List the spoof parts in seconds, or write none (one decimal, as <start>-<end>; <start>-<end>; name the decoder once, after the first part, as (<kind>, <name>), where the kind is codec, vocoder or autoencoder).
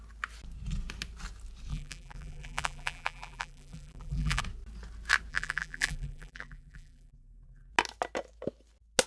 1.7-4.4 (vocoder, BigVGAN v2); 5.3-7.7